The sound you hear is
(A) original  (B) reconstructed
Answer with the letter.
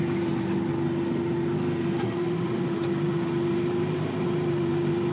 A